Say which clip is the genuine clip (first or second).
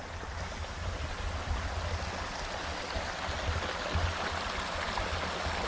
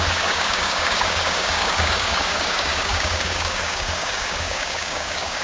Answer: first